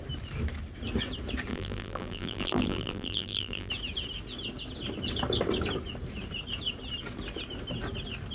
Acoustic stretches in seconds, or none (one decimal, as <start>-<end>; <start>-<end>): 0.0-1.5; 3.7-8.3